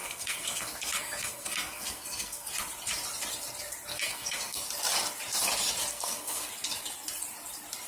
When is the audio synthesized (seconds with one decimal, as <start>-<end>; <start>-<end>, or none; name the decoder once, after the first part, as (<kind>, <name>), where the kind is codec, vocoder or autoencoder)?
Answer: 0.0-2.5 (codec, SNAC); 3.9-4.6; 5.9-6.5